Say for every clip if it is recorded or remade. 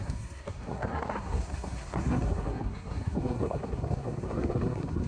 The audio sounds remade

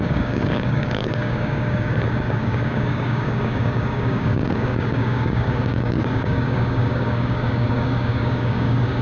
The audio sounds remade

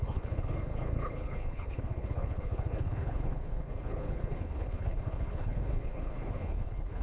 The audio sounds remade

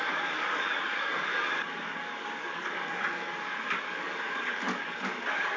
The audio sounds remade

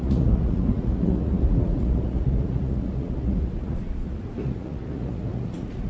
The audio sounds remade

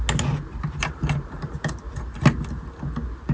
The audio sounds recorded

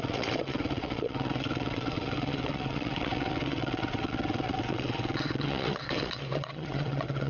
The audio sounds remade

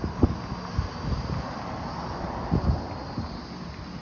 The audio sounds recorded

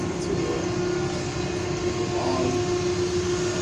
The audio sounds recorded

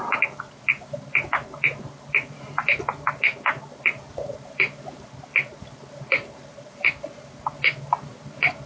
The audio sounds remade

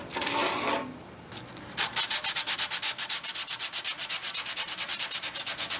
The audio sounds recorded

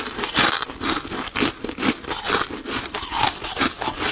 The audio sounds recorded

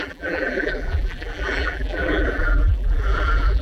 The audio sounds remade